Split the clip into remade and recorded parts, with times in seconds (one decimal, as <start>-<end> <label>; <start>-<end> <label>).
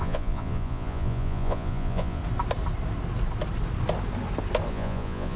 0.0-2.2 remade; 2.2-4.7 recorded; 4.7-5.4 remade